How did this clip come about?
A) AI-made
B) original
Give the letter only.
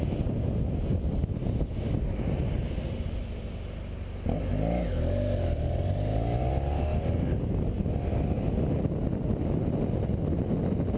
B